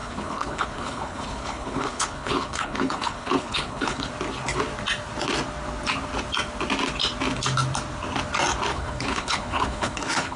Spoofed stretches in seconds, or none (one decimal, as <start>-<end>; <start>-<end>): 0.0-4.1; 8.7-10.4